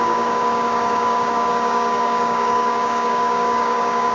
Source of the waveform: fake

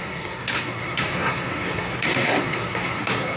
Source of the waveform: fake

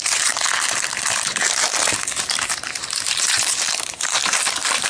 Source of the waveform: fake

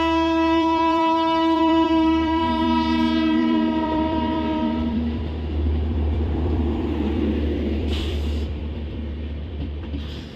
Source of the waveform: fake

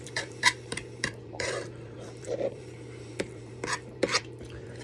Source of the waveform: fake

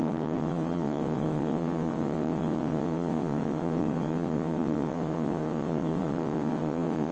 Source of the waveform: fake